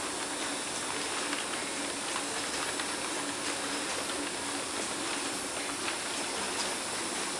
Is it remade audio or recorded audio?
recorded